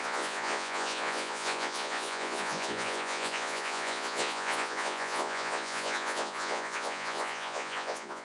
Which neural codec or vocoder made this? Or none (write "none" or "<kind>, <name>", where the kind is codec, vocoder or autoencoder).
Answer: vocoder, Vocos